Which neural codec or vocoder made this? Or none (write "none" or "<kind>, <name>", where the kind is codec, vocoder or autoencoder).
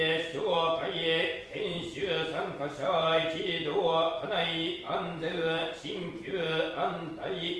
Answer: vocoder, Vocos